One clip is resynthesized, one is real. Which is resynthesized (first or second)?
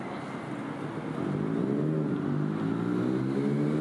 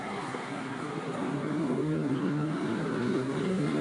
second